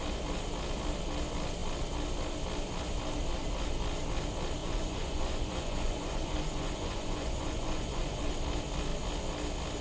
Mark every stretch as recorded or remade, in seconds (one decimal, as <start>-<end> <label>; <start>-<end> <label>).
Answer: 0.0-4.6 recorded; 4.6-8.2 remade; 8.2-9.8 recorded